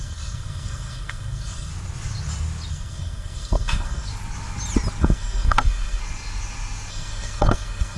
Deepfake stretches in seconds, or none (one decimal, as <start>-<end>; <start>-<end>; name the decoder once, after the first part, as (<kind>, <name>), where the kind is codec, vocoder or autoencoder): 0.0-1.7 (codec, SNAC); 2.7-4.1; 5.0-6.0; 6.9-8.0